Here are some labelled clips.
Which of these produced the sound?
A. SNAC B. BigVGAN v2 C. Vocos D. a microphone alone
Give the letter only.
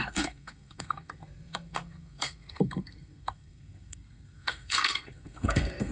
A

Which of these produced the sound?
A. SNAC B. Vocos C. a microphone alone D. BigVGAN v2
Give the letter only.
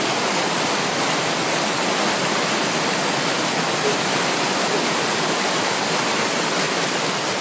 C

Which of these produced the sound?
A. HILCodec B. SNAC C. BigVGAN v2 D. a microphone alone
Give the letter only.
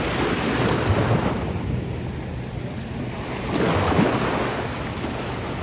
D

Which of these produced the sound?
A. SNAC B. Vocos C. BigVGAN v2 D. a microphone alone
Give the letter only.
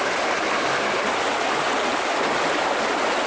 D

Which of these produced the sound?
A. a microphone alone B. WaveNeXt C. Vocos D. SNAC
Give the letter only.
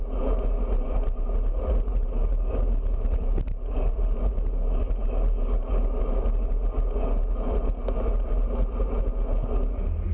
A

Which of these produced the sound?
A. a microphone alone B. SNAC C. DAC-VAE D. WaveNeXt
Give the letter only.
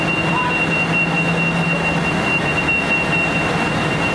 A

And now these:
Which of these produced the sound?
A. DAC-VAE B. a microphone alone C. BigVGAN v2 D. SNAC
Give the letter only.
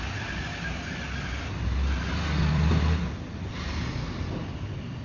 B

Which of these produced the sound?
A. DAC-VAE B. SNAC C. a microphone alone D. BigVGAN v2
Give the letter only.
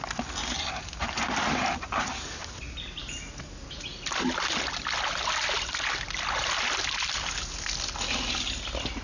C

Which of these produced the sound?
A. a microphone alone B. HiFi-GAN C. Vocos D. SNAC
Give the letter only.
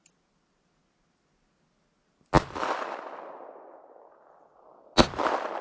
A